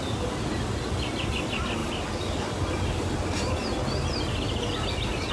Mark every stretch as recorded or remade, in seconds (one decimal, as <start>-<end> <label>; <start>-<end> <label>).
0.0-5.3 recorded

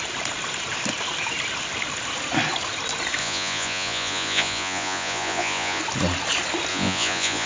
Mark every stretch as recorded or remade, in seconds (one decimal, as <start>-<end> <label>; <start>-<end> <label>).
0.0-3.2 recorded; 3.2-5.8 remade; 5.8-6.7 recorded; 6.7-7.5 remade